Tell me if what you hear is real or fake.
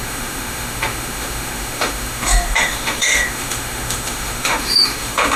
fake